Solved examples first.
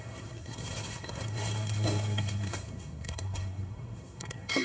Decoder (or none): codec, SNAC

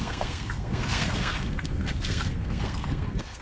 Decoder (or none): codec, SNAC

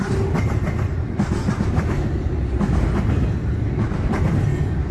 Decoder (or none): none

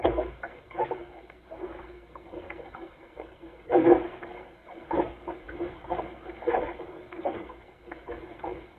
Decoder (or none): codec, SNAC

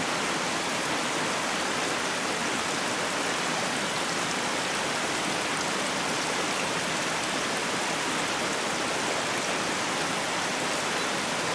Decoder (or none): none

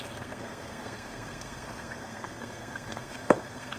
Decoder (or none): codec, SNAC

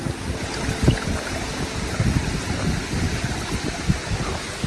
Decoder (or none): none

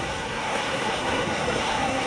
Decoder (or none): codec, SNAC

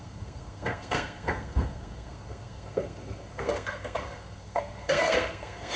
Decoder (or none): codec, SNAC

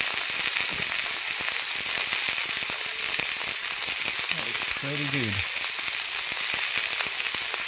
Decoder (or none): none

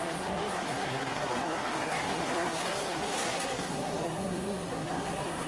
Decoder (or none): codec, SNAC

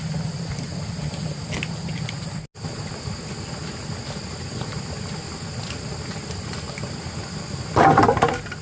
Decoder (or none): none